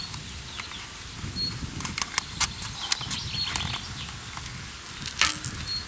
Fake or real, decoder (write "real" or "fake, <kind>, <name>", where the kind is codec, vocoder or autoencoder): real